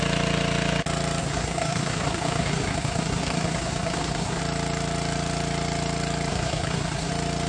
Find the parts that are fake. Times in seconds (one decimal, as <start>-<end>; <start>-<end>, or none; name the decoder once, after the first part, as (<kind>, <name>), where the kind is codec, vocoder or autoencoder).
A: 1.2-4.4 (codec, SNAC); 6.3-7.1